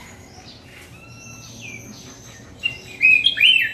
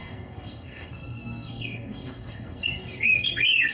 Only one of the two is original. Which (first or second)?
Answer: first